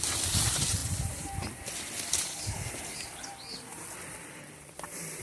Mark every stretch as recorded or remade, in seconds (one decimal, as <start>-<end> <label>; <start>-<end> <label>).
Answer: 0.0-5.2 remade